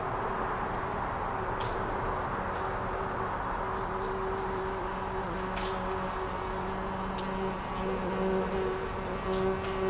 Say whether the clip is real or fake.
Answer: real